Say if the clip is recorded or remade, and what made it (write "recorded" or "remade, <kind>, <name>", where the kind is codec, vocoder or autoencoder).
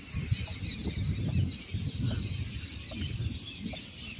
recorded